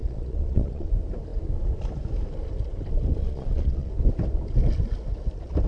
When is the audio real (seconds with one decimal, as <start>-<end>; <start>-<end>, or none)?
0.9-3.2; 3.9-5.7